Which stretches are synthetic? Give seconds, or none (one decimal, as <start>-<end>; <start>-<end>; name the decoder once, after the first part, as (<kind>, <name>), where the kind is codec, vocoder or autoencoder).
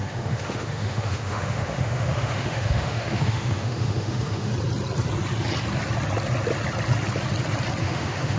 0.0-4.5 (autoencoder, DAC-VAE); 7.8-8.4